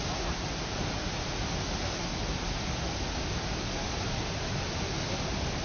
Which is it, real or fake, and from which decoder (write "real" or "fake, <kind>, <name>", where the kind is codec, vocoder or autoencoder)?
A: real